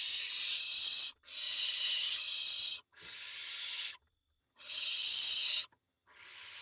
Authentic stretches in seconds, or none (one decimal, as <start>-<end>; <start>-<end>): 0.0-1.5; 2.2-2.7; 4.0-4.4